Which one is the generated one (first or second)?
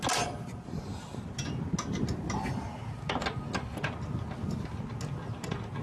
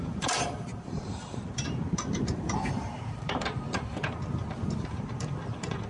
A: second